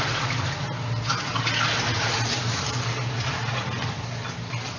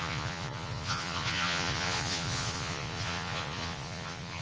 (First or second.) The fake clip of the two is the second